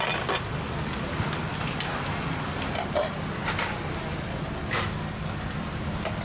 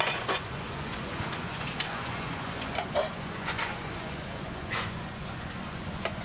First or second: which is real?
first